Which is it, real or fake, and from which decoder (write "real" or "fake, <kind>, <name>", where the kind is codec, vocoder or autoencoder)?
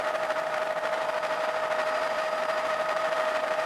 fake, vocoder, BigVGAN v2